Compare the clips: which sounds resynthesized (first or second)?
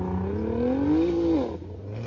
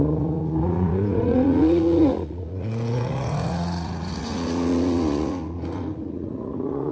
second